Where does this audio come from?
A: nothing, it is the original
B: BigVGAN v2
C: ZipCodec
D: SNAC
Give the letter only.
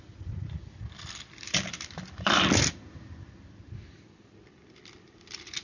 B